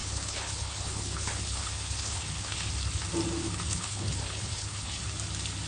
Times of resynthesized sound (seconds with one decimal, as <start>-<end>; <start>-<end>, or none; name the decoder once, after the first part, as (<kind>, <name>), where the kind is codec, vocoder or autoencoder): 0.0-2.7 (codec, HILCodec); 3.4-5.0